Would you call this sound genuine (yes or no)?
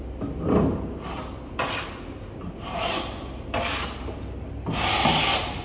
yes